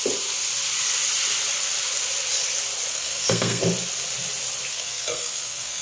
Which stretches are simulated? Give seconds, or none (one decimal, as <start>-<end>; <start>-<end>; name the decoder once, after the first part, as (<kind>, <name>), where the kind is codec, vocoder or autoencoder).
2.9-3.6 (codec, SNAC); 4.7-5.8